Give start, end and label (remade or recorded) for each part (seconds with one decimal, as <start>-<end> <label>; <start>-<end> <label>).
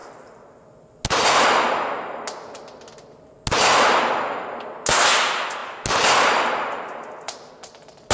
0.0-8.1 recorded